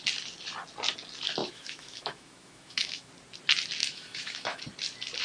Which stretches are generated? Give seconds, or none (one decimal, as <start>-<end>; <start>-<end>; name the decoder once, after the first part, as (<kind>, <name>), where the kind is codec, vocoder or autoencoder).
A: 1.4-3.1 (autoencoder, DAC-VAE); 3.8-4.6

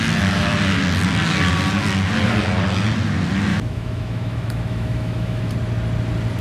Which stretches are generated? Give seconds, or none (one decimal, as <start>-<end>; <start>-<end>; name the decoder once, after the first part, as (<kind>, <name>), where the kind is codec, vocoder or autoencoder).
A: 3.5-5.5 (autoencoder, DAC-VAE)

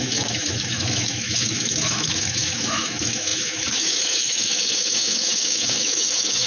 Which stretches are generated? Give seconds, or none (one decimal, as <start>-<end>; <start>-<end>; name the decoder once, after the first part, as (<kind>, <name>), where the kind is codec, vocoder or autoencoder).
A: 0.0-6.5 (autoencoder, DAC-VAE)

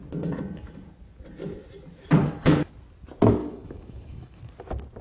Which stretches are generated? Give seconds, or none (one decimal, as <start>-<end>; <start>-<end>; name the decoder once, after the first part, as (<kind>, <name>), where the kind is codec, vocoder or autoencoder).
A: 2.2-2.7 (autoencoder, DAC-VAE); 3.4-4.4

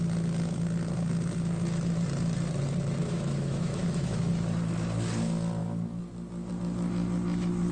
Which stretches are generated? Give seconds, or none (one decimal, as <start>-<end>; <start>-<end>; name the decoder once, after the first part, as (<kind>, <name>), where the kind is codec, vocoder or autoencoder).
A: 3.0-4.3 (autoencoder, DAC-VAE)

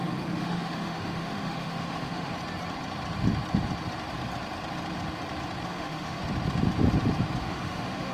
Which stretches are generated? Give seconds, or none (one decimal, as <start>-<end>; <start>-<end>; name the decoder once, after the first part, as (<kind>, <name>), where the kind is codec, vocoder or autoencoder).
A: 0.0-2.3 (autoencoder, DAC-VAE); 5.7-6.2; 7.4-8.1

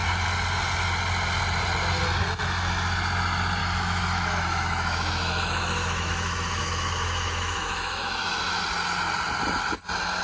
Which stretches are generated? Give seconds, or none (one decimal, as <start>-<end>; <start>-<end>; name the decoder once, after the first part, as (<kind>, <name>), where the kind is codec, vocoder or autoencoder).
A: 3.6-8.6 (autoencoder, DAC-VAE)

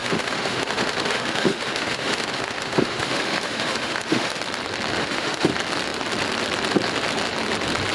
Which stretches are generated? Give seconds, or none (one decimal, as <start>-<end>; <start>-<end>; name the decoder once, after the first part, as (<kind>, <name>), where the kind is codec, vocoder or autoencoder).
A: 0.0-4.4 (autoencoder, DAC-VAE); 5.0-5.5